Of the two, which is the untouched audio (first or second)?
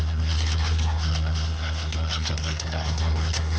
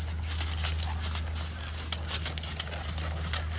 second